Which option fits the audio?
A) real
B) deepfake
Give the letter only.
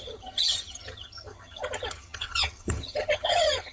B